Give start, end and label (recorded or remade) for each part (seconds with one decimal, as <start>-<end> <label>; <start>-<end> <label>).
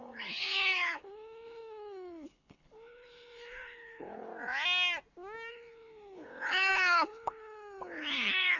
0.0-4.3 remade; 4.3-5.5 recorded; 5.5-8.6 remade